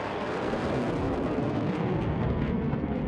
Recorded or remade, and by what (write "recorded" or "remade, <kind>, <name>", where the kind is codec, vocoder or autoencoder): remade, codec, SNAC